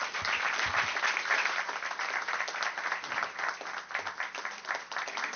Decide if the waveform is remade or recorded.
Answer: recorded